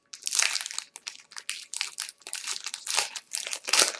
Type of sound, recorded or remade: recorded